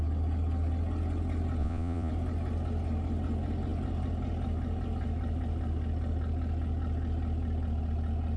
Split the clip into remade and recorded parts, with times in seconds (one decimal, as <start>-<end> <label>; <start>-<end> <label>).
0.0-1.6 recorded; 1.6-2.1 remade; 2.1-8.4 recorded